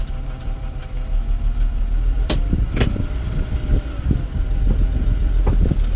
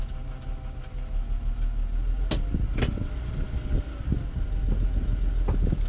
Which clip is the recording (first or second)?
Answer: second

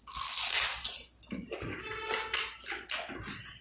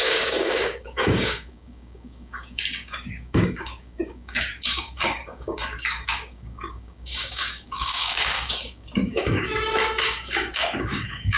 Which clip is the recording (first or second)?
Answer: first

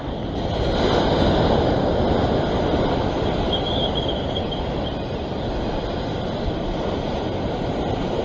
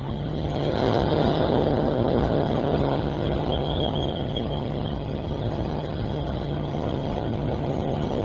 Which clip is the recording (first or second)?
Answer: first